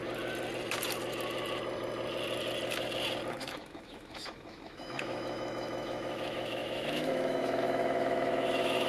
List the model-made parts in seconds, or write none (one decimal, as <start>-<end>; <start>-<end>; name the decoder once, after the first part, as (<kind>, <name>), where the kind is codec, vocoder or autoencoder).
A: 3.3-8.9 (autoencoder, DAC-VAE)